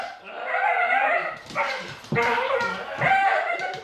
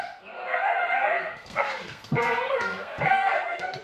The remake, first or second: second